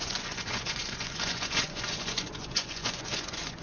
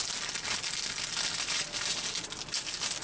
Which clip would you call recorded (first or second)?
second